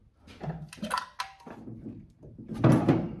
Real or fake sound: real